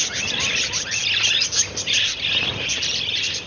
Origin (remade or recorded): recorded